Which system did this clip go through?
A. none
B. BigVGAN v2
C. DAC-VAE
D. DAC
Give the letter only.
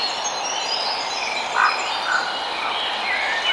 A